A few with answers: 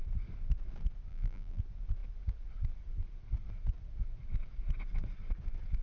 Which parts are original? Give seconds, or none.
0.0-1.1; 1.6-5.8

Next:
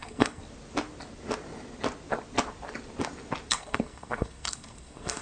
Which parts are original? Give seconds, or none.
0.4-3.5

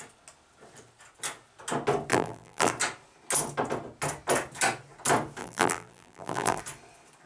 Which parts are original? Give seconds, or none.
0.0-2.1; 2.7-5.4; 6.6-7.3

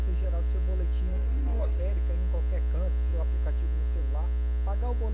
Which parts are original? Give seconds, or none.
0.0-1.1; 1.8-5.1

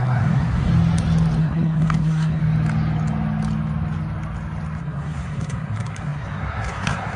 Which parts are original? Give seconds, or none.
0.7-1.4; 2.4-4.8

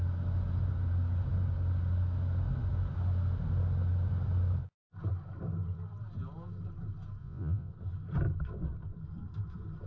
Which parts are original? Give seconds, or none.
0.0-7.2; 7.7-9.9

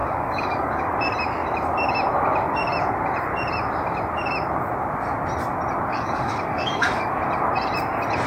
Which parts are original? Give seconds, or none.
0.8-5.9; 7.2-8.3

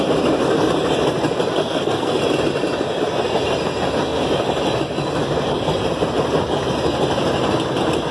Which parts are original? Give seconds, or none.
0.0-1.6; 2.2-8.1